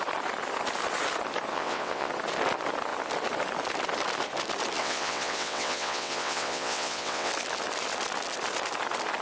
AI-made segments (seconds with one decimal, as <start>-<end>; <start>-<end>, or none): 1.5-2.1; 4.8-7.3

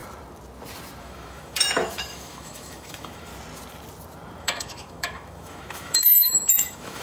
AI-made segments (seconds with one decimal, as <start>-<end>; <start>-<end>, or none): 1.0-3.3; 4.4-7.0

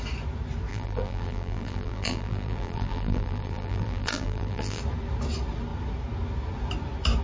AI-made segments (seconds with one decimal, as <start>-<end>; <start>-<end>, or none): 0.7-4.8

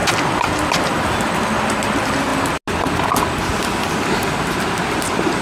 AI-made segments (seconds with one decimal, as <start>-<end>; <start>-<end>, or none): none